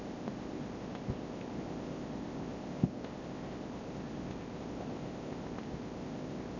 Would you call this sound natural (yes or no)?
no